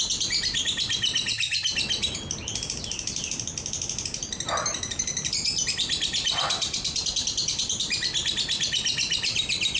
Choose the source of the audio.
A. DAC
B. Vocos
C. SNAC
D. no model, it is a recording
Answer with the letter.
D